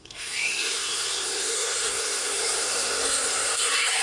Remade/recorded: remade